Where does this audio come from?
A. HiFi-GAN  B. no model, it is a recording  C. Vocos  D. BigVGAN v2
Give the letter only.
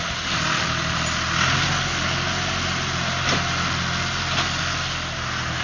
B